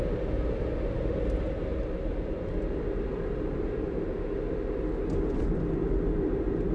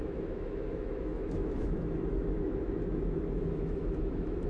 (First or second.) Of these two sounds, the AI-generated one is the second